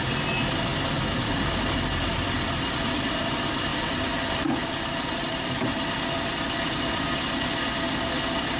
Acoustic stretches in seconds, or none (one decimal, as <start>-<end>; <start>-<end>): 0.0-0.7; 3.1-3.7; 7.1-8.6